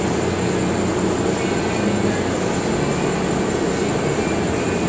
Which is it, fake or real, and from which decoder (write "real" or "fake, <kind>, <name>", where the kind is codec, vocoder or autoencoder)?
real